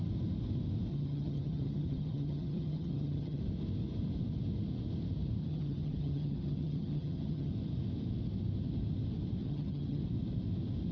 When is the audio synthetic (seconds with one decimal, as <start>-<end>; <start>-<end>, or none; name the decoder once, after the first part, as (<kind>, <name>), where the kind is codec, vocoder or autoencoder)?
0.9-3.4 (vocoder, HiFi-GAN); 5.4-7.5; 9.4-10.0